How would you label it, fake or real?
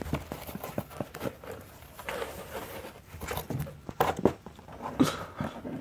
real